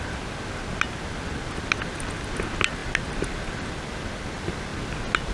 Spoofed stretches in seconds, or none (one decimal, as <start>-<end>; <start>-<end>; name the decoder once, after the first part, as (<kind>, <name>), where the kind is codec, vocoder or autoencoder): none